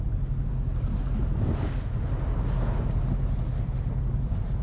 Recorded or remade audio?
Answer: recorded